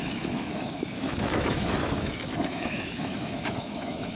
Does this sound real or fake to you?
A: fake